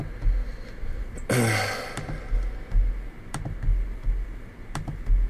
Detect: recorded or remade recorded